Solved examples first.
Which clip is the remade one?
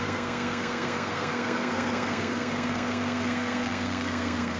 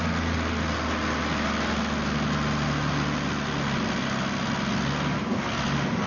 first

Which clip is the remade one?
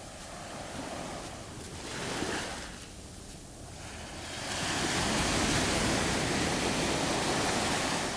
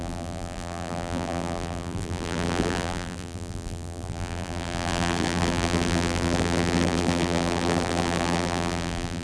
second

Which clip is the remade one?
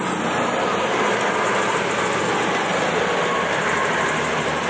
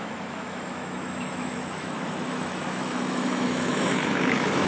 second